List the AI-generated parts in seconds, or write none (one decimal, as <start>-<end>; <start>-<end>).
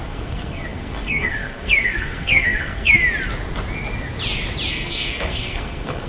0.0-3.0; 4.7-6.1